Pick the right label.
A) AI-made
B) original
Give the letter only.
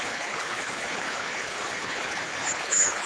A